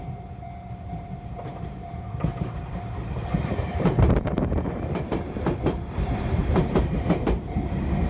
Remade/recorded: remade